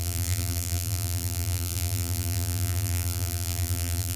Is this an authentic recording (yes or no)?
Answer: no